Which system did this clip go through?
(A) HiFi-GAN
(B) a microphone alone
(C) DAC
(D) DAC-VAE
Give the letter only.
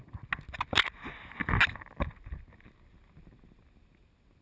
B